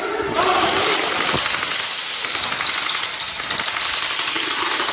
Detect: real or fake real